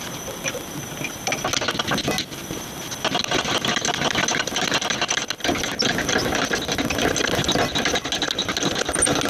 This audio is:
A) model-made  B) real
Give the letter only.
B